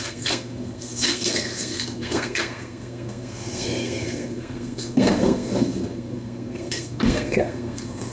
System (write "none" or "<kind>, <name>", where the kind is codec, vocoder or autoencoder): codec, SNAC